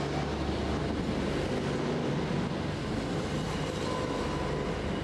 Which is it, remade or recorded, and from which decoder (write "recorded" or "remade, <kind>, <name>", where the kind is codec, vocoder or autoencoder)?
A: recorded